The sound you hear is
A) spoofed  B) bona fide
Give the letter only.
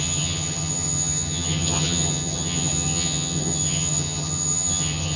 A